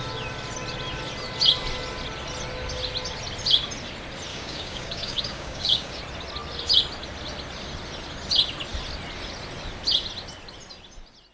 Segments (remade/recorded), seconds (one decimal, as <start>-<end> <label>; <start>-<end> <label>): 0.0-4.3 recorded; 4.3-6.0 remade; 6.0-11.3 recorded